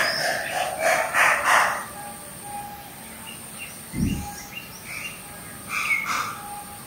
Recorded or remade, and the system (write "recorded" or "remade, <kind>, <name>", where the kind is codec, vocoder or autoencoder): recorded